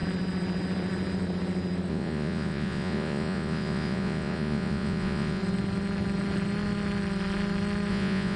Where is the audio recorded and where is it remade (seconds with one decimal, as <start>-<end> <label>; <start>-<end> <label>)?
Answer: 0.0-1.9 recorded; 1.9-5.4 remade; 5.4-7.9 recorded; 7.9-8.4 remade